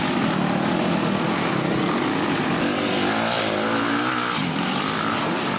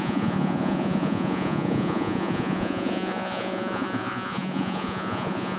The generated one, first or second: second